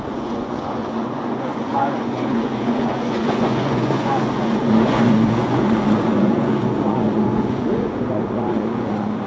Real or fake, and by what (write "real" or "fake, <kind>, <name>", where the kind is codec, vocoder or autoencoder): fake, vocoder, Vocos